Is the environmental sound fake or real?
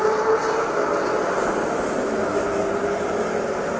real